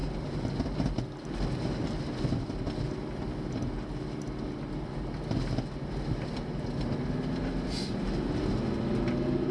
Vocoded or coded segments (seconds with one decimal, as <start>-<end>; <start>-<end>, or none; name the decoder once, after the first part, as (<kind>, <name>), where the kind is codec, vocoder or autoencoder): none

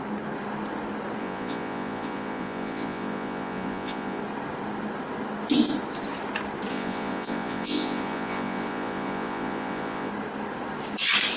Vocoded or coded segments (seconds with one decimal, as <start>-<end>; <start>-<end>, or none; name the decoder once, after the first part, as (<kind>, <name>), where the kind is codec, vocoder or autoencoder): 1.2-4.2 (vocoder, Vocos); 6.7-10.1

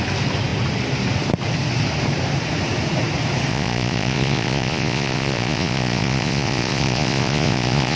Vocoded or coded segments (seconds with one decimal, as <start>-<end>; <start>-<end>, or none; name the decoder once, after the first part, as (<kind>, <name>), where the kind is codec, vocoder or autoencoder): 3.5-8.0 (vocoder, Vocos)

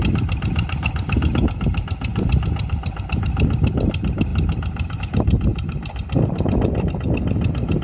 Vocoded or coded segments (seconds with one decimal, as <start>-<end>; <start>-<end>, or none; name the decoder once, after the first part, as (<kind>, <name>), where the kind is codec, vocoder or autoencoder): 5.5-6.9 (vocoder, BigVGAN v2)

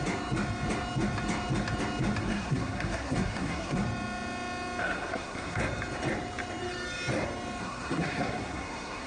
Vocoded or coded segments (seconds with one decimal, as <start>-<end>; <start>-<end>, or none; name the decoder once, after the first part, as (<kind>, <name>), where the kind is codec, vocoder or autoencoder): 2.2-3.8 (codec, SNAC); 4.8-5.6; 7.6-9.1

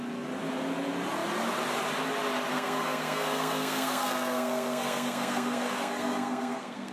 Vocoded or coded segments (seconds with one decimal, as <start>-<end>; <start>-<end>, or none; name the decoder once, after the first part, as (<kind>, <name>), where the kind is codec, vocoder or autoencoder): 2.5-6.9 (codec, SNAC)